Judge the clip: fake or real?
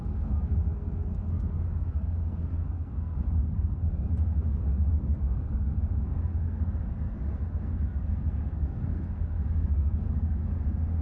fake